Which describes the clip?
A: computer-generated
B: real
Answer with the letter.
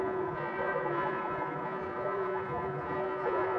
A